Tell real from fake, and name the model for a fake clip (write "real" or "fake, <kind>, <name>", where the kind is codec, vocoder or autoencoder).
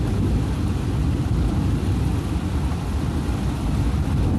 real